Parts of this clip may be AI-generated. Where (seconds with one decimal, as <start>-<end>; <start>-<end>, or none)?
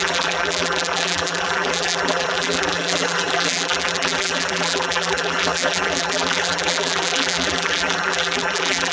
0.0-8.9